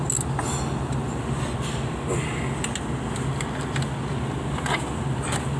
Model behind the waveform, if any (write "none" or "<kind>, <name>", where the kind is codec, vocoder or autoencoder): none